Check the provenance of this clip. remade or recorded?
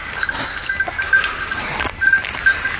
recorded